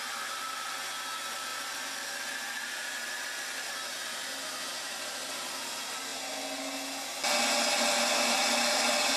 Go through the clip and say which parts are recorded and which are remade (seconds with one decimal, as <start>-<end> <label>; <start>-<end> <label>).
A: 0.0-1.5 recorded; 1.5-3.7 remade; 3.7-4.7 recorded; 4.7-5.4 remade; 5.4-9.2 recorded